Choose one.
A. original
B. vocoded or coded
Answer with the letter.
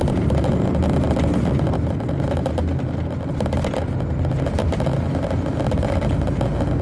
A